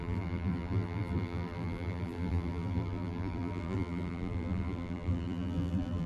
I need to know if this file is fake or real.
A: fake